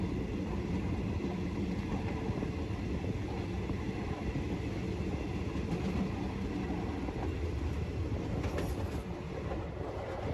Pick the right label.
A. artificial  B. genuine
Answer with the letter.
B